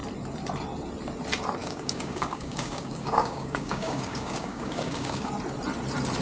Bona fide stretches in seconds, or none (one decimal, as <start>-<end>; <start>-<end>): 0.0-1.6; 5.3-6.2